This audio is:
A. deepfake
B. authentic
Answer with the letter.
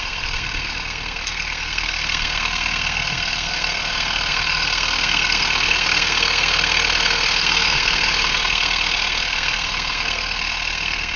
A